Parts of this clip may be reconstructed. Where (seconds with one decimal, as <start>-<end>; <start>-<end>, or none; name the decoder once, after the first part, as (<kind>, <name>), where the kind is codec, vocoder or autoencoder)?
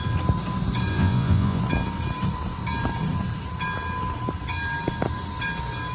0.9-1.6 (vocoder, Vocos)